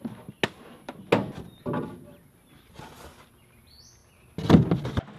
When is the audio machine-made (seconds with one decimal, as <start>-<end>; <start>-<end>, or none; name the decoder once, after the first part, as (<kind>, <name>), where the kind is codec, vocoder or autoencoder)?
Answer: none